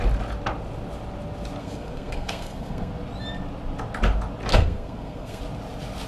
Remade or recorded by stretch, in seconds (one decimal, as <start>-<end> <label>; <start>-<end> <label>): 0.0-1.6 recorded; 1.6-2.9 remade; 2.9-4.5 recorded; 4.5-5.4 remade; 5.4-6.1 recorded